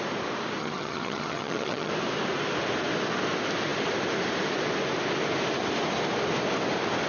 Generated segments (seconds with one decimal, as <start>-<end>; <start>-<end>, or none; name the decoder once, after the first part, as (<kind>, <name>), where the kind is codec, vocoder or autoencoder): 0.6-1.9 (vocoder, HiFi-GAN)